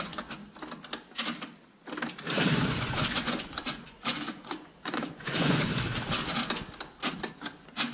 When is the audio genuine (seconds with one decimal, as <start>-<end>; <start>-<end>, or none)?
0.4-2.5; 5.7-7.3